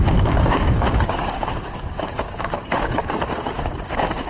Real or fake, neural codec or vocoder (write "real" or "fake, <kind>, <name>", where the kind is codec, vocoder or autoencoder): fake, codec, DAC